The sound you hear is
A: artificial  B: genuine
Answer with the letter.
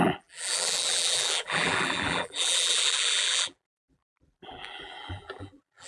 A